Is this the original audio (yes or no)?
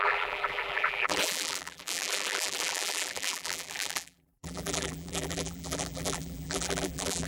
no